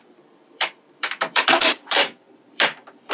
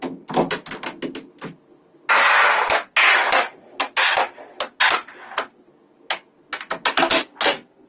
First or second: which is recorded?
second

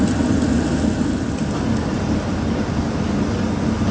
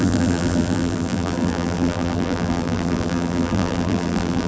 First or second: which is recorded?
first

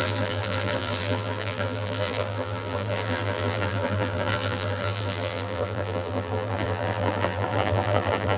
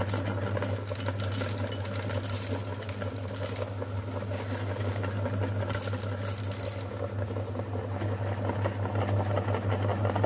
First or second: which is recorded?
second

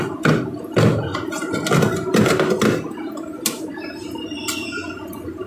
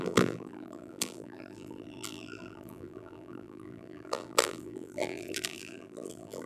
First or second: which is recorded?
first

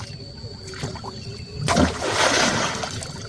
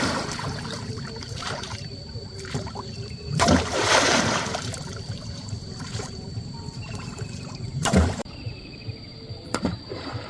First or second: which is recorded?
first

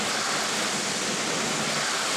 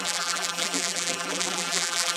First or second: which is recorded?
first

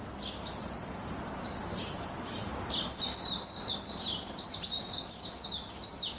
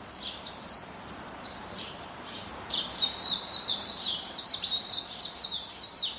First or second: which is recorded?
first